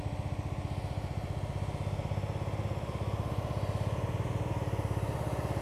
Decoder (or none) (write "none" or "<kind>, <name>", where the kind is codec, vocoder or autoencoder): none